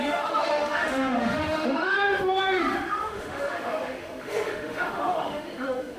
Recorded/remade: remade